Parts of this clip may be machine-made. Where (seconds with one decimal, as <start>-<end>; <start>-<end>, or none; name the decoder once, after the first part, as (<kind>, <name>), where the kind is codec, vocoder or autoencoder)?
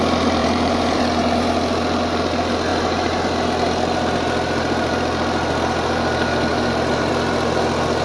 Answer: 0.4-1.0 (vocoder, BigVGAN v2); 2.7-3.2; 6.5-7.1